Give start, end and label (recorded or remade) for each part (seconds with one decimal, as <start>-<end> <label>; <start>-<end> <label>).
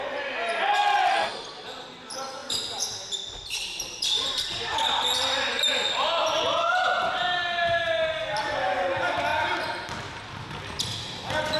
0.0-1.3 recorded; 1.3-1.8 remade; 1.8-2.4 recorded; 2.4-6.8 remade; 6.8-11.6 recorded